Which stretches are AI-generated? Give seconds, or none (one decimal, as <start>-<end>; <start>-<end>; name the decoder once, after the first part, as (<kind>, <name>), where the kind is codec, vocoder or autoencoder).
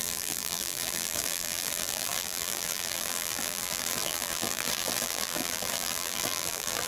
0.0-6.9 (vocoder, BigVGAN v2)